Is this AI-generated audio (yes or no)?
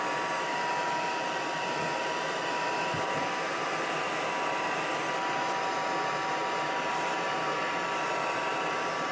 no